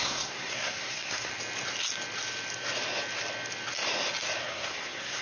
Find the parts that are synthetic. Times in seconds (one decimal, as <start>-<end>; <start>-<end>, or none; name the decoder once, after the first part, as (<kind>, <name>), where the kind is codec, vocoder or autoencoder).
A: 0.0-1.3 (codec, SNAC); 4.4-5.2